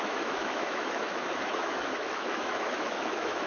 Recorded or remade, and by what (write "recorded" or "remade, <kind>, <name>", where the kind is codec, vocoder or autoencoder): remade, autoencoder, DAC-VAE